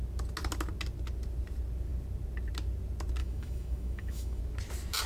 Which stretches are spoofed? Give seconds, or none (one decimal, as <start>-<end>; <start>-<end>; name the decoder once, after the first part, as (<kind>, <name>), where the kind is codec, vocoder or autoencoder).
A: 3.2-4.4 (autoencoder, DAC-VAE)